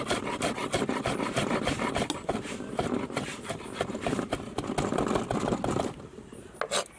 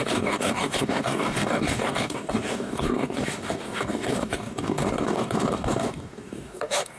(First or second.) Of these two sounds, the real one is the first